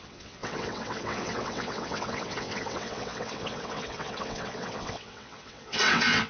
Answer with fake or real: fake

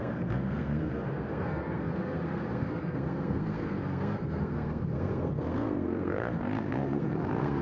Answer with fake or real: fake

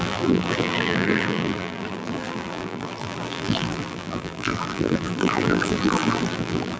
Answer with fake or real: fake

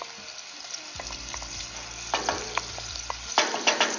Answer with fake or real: real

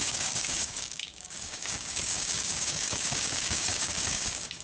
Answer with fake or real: fake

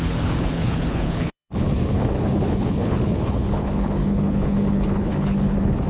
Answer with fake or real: fake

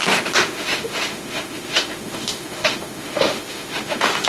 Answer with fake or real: fake